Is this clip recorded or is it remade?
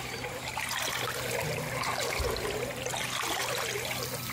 recorded